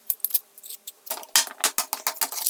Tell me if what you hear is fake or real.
real